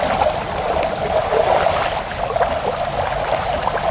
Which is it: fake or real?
real